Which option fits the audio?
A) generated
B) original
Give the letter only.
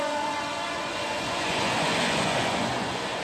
A